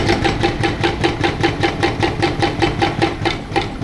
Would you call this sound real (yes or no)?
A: yes